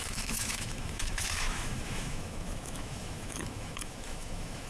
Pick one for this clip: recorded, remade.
remade